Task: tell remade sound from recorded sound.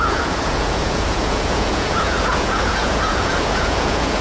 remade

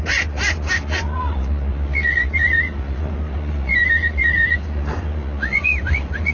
remade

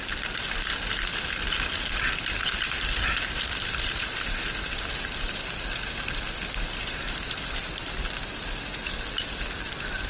recorded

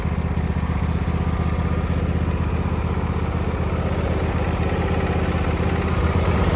recorded